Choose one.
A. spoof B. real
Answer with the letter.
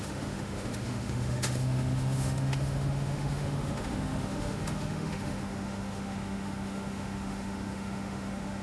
A